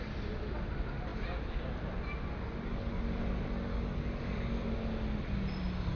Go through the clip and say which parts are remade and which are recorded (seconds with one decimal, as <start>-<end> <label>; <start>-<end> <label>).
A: 0.0-3.7 recorded; 3.7-4.5 remade; 4.5-6.0 recorded